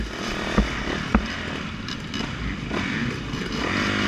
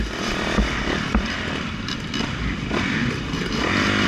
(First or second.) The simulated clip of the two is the second